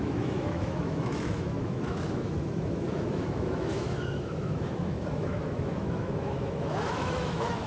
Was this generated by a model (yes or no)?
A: yes